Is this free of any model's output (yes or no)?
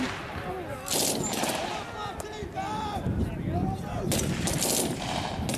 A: yes